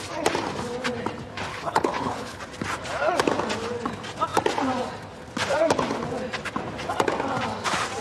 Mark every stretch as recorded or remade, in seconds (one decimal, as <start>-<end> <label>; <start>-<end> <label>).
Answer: 0.0-1.5 recorded; 1.5-2.4 remade; 2.4-8.0 recorded